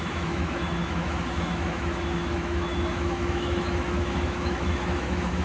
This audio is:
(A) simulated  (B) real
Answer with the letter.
A